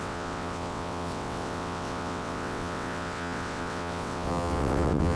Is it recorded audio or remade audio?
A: remade